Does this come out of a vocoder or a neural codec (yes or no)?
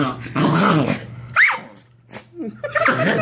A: no